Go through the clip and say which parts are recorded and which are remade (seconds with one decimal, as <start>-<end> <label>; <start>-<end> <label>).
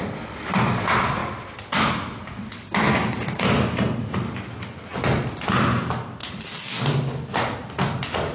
0.0-8.3 recorded